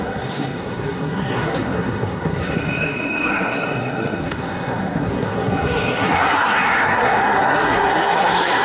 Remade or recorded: remade